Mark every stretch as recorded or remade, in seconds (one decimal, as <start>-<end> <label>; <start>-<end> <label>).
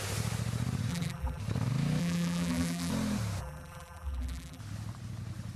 0.0-0.9 recorded; 0.9-1.4 remade; 1.4-2.0 recorded; 2.0-2.9 remade; 2.9-3.4 recorded; 3.4-4.6 remade; 4.6-5.6 recorded